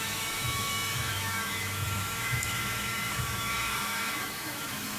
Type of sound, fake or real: fake